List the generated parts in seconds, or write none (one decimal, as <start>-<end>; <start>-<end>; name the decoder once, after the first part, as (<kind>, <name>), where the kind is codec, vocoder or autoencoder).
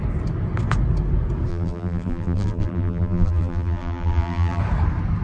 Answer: 1.5-4.6 (vocoder, BigVGAN v2)